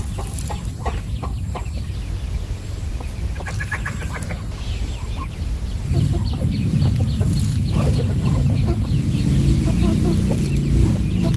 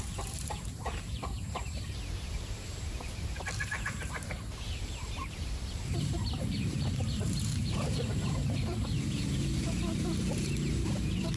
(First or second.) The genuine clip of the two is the first